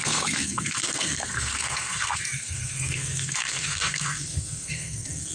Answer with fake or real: fake